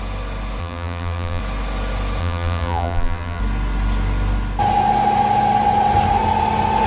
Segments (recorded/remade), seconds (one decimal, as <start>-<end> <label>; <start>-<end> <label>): 0.0-0.6 recorded; 0.6-1.4 remade; 1.4-2.2 recorded; 2.2-3.4 remade; 3.4-6.9 recorded